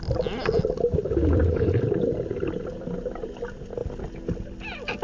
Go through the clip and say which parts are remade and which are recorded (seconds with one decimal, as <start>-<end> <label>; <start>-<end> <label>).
0.0-5.0 recorded

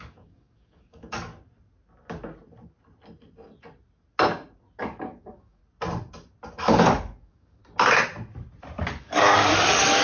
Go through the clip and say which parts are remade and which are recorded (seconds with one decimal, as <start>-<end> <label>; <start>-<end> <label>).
0.0-1.3 remade; 1.3-4.8 recorded; 4.8-5.6 remade; 5.6-6.5 recorded; 6.5-7.6 remade; 7.6-8.8 recorded; 8.8-10.0 remade

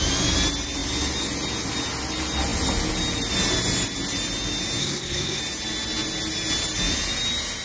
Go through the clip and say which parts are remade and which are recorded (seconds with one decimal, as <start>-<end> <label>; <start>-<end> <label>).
0.0-4.8 recorded; 4.8-5.4 remade; 5.4-7.6 recorded

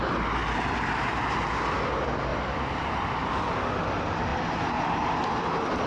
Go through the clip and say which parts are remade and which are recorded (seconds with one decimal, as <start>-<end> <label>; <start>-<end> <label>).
0.0-2.3 recorded; 2.3-3.1 remade; 3.1-5.9 recorded

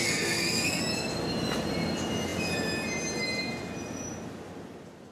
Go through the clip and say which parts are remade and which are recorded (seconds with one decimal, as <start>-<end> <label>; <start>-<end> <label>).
0.0-0.8 remade; 0.8-5.1 recorded

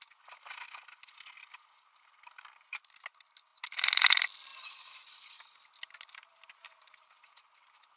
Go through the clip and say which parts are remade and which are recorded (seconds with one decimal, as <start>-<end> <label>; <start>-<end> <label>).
0.0-8.0 recorded

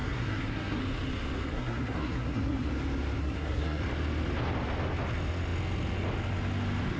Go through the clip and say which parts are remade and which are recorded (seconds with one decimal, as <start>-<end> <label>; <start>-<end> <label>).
0.0-0.8 remade; 0.8-1.5 recorded; 1.5-2.7 remade; 2.7-3.2 recorded; 3.2-3.8 remade; 3.8-7.0 recorded